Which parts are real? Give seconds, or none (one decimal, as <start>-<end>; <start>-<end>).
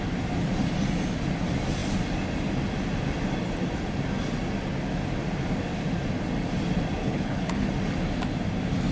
0.0-7.0; 7.7-8.9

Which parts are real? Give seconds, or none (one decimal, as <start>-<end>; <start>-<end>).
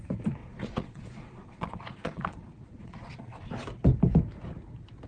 0.0-0.4; 3.5-5.1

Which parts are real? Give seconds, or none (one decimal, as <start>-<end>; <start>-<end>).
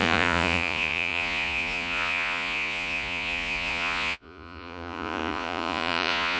none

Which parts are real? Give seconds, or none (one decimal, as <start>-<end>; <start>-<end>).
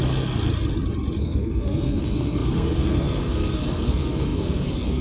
0.0-1.2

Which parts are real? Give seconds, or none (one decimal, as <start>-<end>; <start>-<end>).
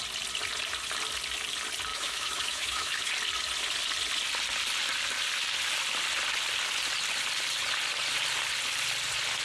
0.0-1.9; 3.1-9.4